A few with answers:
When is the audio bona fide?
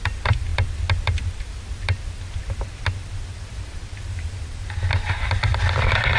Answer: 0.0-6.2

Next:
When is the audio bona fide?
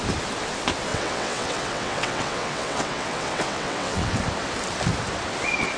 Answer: 0.0-0.9; 4.2-5.8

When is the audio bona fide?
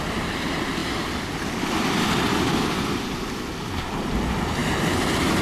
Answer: 4.6-5.4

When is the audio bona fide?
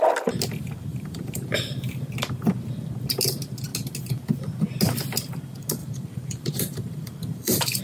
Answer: 0.0-0.9; 1.6-5.8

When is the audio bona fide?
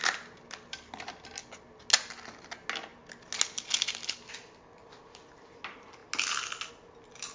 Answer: 0.0-7.3